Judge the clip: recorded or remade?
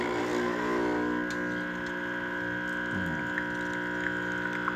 recorded